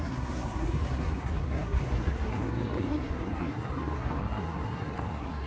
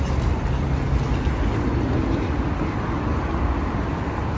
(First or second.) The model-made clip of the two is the first